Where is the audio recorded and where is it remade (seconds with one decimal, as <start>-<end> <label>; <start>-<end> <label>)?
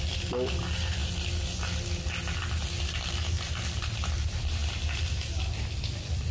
0.0-6.3 recorded